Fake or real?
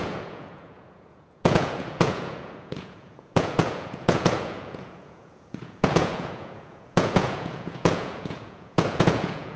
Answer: fake